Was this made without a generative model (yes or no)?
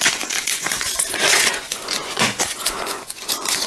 no